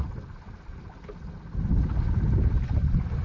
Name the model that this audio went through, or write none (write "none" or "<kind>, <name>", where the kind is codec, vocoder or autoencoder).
none